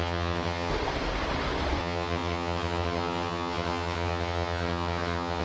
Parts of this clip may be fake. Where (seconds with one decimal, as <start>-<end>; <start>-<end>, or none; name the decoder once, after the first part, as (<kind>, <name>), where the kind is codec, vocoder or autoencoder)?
0.0-0.7 (vocoder, HiFi-GAN); 1.8-5.4